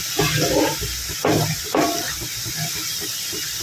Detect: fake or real real